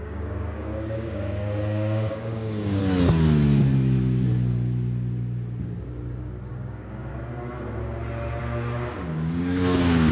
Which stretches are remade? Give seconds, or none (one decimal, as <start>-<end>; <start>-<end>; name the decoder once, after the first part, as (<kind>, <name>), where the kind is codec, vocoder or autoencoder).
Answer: 0.0-2.8 (codec, DAC); 6.5-7.1; 8.4-10.1